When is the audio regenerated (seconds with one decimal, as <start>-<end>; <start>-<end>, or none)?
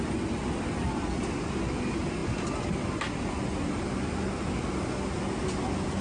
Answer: none